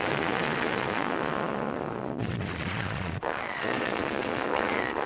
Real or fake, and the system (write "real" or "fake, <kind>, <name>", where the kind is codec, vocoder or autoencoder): fake, vocoder, Vocos